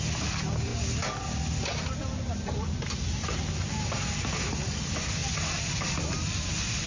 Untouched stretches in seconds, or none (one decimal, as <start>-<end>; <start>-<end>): 0.0-6.9